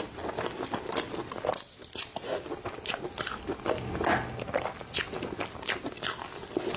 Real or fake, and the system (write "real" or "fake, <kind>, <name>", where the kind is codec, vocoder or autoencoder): real